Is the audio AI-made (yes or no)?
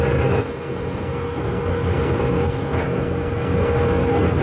yes